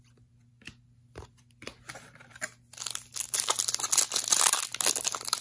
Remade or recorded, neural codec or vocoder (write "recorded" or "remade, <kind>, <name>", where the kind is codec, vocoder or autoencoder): recorded